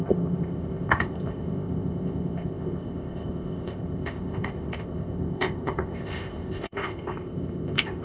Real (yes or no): no